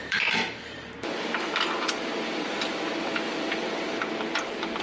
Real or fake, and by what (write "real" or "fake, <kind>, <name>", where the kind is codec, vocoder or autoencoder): real